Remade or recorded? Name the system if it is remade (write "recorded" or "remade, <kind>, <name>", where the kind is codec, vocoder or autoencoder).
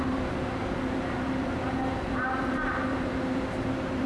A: remade, vocoder, BigVGAN v2